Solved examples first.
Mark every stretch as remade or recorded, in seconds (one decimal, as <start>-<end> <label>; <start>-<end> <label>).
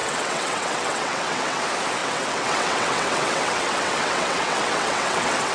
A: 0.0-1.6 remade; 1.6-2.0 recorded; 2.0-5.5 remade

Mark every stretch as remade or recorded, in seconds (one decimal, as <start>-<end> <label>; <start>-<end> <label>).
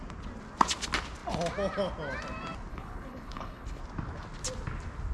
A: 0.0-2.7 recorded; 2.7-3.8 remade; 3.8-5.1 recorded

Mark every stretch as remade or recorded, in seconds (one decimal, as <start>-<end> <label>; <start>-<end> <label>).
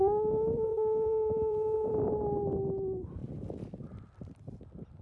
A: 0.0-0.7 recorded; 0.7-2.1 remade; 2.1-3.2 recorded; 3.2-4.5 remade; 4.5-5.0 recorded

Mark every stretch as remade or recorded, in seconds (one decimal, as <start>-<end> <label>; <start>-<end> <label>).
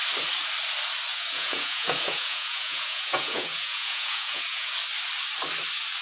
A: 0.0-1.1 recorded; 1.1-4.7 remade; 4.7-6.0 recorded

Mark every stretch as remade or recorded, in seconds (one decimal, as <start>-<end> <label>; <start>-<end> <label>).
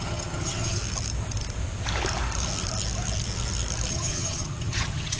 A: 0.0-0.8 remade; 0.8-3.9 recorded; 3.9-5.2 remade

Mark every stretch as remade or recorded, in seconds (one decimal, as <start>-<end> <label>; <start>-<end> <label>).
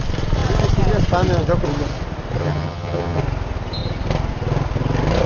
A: 0.0-2.4 recorded; 2.4-3.2 remade; 3.2-5.3 recorded